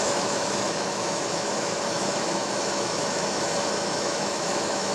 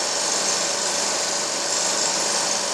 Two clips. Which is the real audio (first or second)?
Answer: second